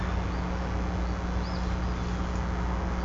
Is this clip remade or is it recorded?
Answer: recorded